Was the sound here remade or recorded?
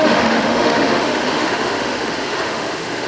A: remade